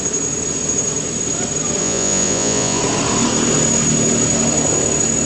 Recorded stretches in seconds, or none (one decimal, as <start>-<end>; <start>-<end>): 0.0-1.8; 2.8-5.2